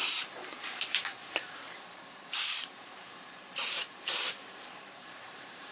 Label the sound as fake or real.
fake